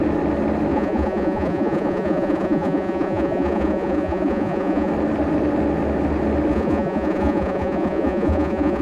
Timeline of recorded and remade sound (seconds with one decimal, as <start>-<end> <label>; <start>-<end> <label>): 0.0-0.7 recorded; 0.7-4.9 remade; 4.9-6.5 recorded; 6.5-8.8 remade